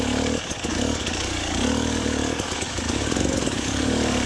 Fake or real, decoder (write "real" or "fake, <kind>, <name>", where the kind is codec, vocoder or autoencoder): fake, codec, DAC